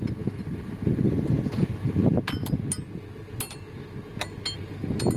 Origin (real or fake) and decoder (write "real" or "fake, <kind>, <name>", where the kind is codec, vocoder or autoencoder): real